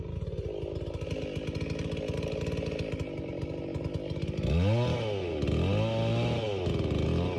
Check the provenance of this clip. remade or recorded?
recorded